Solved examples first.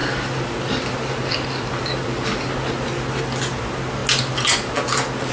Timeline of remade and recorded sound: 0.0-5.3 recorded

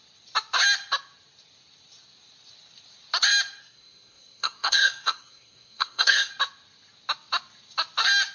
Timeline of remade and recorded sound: 0.0-3.6 recorded; 3.6-6.3 remade; 6.3-8.3 recorded